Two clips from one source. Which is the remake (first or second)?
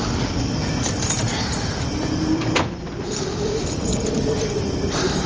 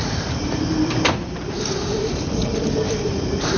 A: second